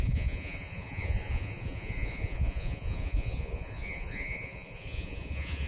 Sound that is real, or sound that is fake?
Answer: fake